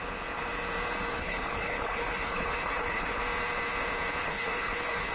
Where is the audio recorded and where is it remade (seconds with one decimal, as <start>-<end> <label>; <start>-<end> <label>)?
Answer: 0.0-1.1 recorded; 1.1-3.2 remade; 3.2-4.2 recorded; 4.2-5.1 remade